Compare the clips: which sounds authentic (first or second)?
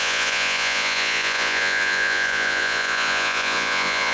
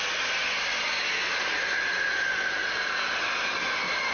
second